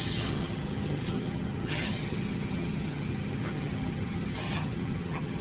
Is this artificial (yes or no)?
yes